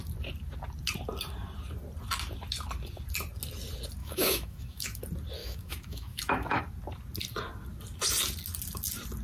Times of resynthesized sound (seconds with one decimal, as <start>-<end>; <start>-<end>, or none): 4.0-5.0; 5.4-6.6